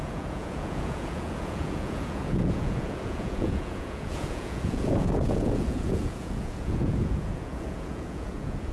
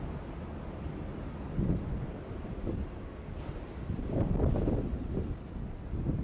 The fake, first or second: first